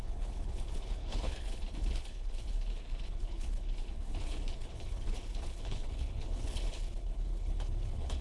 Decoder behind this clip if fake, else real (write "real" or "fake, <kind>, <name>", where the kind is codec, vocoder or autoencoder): fake, codec, HILCodec